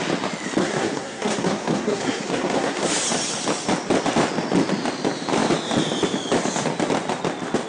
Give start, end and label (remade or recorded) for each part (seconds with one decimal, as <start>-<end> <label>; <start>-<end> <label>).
0.0-0.6 recorded; 0.6-2.9 remade; 2.9-7.7 recorded

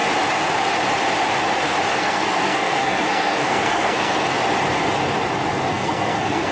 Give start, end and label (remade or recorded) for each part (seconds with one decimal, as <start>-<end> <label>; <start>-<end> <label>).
0.0-1.9 recorded; 1.9-4.3 remade; 4.3-5.7 recorded; 5.7-6.5 remade

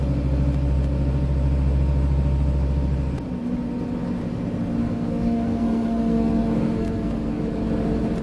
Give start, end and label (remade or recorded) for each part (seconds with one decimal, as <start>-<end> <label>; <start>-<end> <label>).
0.0-4.8 recorded; 4.8-7.4 remade; 7.4-8.2 recorded

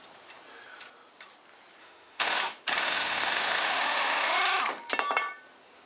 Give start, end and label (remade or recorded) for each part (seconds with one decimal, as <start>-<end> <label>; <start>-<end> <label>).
0.0-1.8 recorded; 1.8-2.4 remade; 2.4-2.8 recorded; 2.8-4.4 remade; 4.4-5.9 recorded